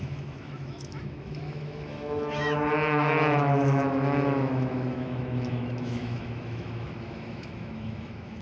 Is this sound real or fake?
fake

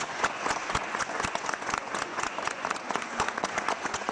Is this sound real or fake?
fake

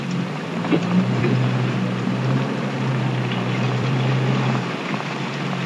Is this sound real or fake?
fake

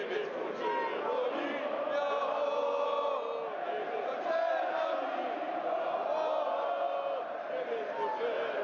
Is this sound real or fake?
real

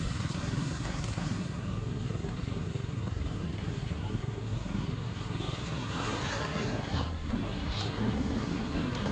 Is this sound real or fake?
fake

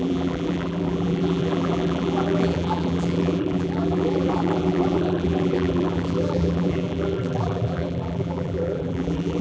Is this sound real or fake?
fake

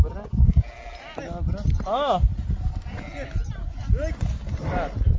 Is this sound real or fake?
real